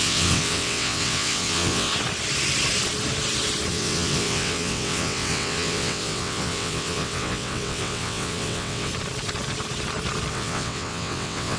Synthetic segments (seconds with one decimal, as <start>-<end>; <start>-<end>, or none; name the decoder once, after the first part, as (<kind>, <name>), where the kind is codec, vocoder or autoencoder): 0.0-1.9 (vocoder, WaveNeXt); 3.7-8.9; 10.3-11.6